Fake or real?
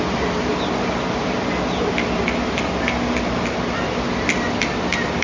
real